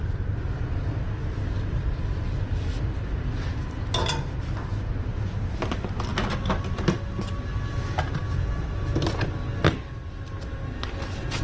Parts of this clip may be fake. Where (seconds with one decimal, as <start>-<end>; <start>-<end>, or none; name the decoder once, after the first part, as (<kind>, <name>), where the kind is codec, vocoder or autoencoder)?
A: none